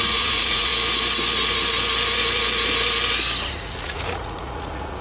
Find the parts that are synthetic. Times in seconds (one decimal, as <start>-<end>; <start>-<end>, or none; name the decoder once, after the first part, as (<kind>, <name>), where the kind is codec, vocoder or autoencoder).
0.0-0.7 (vocoder, Vocos); 3.4-5.0